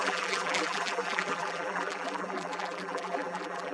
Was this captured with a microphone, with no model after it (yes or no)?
no